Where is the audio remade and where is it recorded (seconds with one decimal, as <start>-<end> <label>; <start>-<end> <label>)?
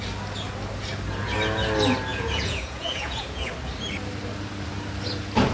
0.0-2.1 recorded; 2.1-3.5 remade; 3.5-5.5 recorded